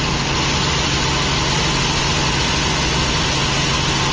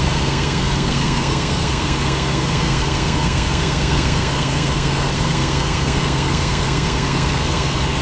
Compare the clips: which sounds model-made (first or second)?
second